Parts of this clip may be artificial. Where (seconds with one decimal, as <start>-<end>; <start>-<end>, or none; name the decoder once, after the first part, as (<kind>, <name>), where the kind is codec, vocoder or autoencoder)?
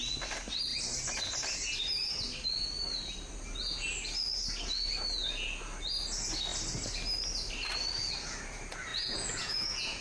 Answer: 8.9-10.0 (vocoder, Vocos)